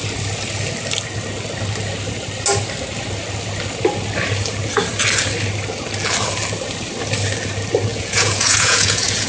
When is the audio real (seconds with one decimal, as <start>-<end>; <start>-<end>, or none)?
0.0-7.9